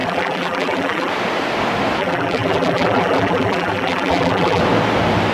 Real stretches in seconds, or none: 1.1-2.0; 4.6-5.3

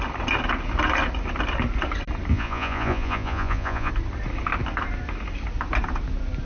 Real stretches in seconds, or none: 0.0-2.3; 3.9-6.5

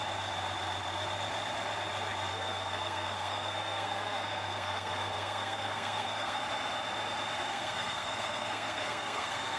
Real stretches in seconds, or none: 0.0-2.3; 6.4-7.5

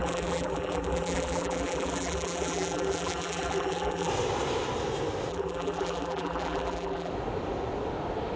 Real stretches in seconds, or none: 4.1-5.3; 7.1-8.4

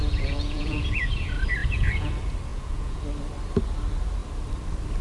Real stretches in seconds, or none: 1.1-1.6; 2.1-2.5; 3.0-5.0

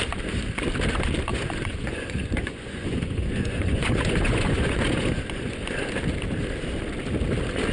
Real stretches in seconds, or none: 0.0-1.3; 5.9-7.7

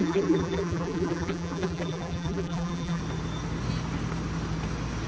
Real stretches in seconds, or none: 3.0-5.1

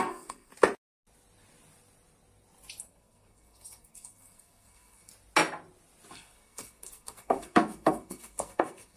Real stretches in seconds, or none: 0.5-2.8; 5.1-6.1